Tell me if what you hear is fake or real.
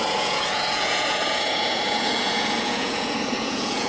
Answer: fake